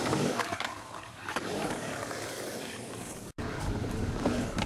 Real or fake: fake